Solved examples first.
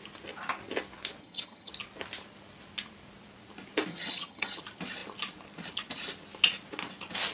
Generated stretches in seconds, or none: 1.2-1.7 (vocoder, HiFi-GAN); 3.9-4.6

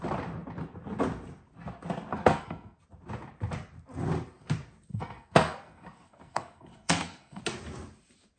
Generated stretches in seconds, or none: 2.1-2.8 (codec, SNAC); 4.9-7.4

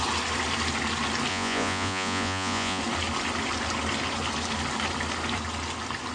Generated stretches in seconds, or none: 1.3-2.8 (vocoder, Vocos)

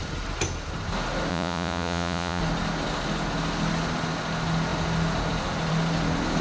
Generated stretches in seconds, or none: 1.3-2.4 (vocoder, Vocos)

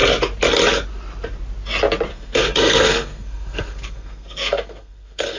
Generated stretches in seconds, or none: 2.1-5.4 (codec, SNAC)

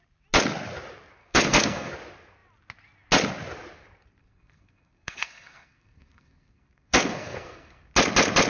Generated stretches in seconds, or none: 1.2-1.9 (codec, SNAC); 4.2-7.9